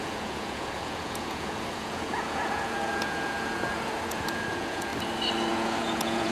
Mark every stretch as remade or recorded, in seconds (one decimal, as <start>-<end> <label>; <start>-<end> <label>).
0.0-4.9 remade; 4.9-5.5 recorded; 5.5-6.3 remade